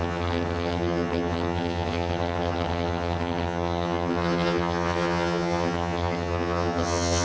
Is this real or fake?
fake